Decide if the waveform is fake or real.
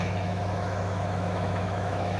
fake